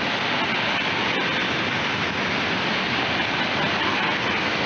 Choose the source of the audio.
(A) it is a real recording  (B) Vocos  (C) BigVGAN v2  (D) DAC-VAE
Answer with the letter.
A